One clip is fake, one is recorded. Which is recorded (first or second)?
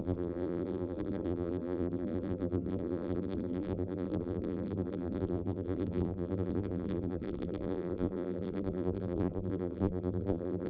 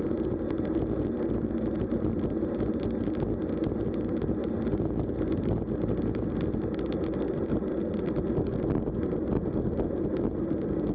second